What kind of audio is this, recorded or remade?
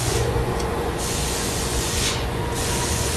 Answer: remade